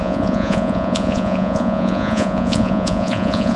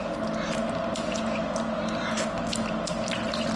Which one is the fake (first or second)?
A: first